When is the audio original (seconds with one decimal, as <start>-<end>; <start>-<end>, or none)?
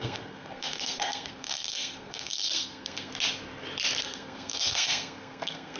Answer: 3.1-4.0